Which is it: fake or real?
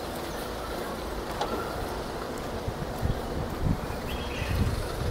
real